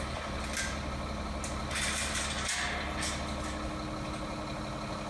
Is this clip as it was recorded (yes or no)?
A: yes